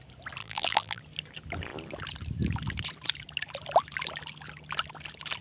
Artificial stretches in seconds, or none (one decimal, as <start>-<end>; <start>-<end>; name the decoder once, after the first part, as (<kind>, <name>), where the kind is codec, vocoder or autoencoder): 0.4-1.0 (vocoder, BigVGAN v2)